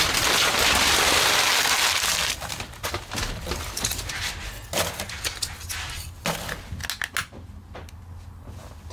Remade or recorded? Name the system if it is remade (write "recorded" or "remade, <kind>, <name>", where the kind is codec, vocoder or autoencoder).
recorded